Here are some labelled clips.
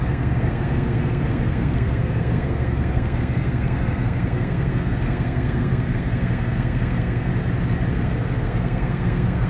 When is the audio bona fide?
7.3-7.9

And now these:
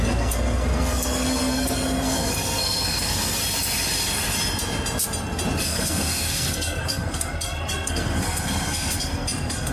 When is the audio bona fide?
3.4-5.6

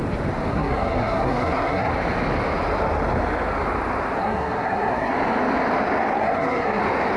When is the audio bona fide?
0.0-0.5; 1.9-4.2; 5.1-6.2; 6.8-7.2

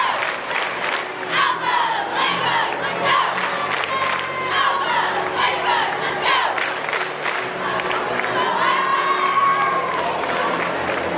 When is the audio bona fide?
0.0-11.2